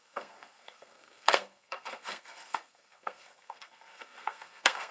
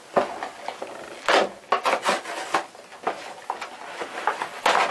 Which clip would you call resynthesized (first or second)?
first